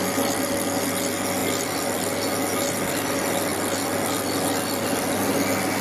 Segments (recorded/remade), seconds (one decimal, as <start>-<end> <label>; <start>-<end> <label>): 0.0-5.8 recorded